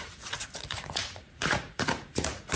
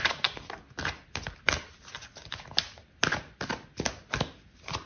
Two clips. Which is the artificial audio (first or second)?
first